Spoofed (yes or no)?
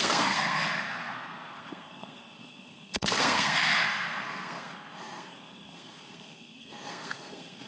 yes